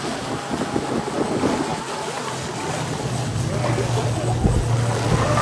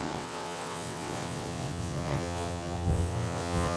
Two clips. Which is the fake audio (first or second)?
second